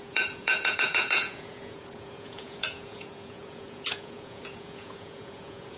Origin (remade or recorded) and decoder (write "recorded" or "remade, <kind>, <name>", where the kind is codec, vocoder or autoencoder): remade, vocoder, Vocos